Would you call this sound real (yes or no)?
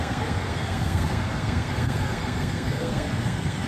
no